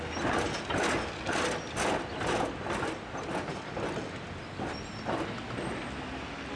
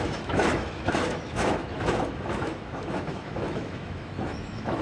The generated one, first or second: second